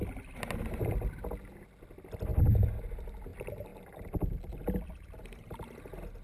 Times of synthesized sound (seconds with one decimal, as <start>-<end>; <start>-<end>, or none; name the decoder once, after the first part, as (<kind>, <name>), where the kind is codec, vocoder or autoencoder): 2.3-3.3 (vocoder, BigVGAN v2); 3.7-5.5